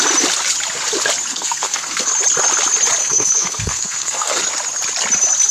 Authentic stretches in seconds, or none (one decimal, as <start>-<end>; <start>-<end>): 0.0-1.3; 2.1-3.0; 4.4-5.5